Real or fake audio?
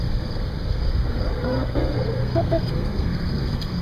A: fake